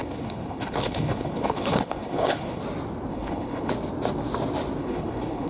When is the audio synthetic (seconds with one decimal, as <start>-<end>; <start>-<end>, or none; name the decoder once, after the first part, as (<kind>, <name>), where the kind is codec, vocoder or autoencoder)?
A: 0.0-2.6 (codec, HILCodec); 3.1-3.7; 4.8-5.5